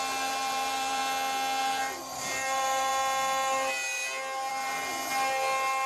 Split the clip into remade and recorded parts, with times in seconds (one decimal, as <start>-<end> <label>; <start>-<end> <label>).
0.0-1.0 remade; 1.0-1.6 recorded; 1.6-2.9 remade; 2.9-4.5 recorded; 4.5-5.0 remade; 5.0-5.9 recorded